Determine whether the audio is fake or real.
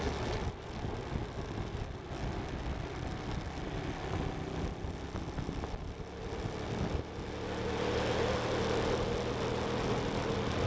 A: real